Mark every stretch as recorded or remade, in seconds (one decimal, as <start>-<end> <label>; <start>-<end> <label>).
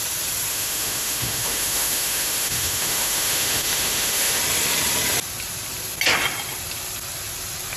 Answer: 0.0-0.5 recorded; 0.5-4.4 remade; 4.4-7.8 recorded